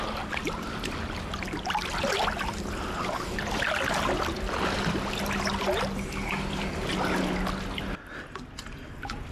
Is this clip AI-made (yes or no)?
no